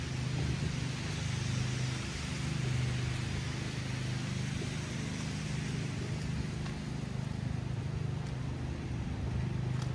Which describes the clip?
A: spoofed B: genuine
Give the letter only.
B